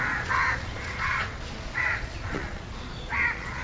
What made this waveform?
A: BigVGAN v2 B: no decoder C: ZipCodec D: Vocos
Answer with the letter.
D